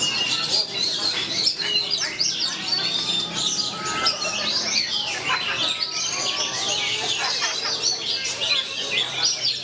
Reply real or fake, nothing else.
real